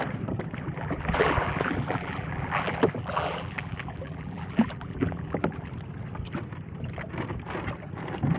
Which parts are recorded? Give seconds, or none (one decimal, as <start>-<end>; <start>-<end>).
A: 0.0-0.7; 5.7-8.4